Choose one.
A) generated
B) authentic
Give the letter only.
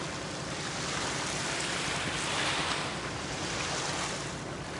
B